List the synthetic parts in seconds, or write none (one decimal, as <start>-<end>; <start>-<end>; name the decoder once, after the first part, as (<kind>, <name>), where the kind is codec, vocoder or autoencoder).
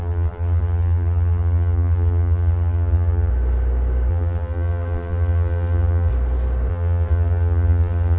0.0-3.3 (vocoder, BigVGAN v2); 4.1-6.1; 6.7-8.2